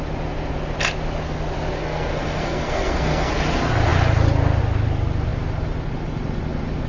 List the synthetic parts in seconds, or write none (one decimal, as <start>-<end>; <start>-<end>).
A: 1.8-3.3